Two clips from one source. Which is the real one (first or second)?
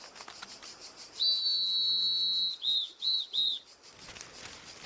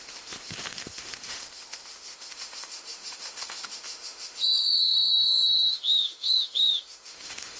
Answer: first